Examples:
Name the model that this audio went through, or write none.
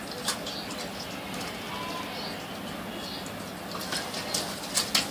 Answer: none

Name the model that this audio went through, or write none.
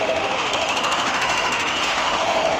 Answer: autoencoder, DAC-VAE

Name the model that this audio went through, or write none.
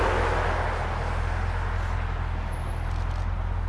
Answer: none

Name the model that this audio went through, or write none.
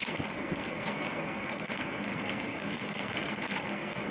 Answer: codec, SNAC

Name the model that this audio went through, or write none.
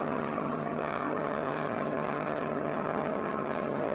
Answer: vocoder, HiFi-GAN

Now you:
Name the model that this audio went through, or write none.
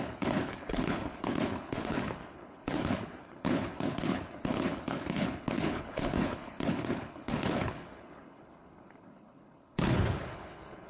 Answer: codec, HILCodec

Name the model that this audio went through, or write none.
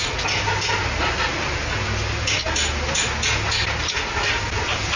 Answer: none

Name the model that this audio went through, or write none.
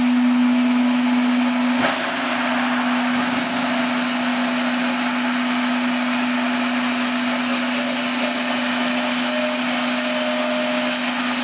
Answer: none